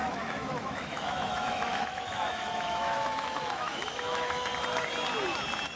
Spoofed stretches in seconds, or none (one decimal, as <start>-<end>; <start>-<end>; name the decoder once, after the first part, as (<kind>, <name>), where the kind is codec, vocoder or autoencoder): 0.0-4.5 (autoencoder, DAC-VAE)